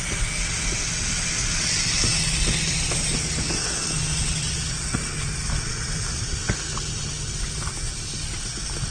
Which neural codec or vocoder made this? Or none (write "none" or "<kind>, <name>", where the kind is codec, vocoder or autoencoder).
none